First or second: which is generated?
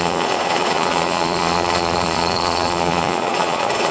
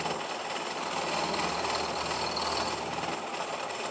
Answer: first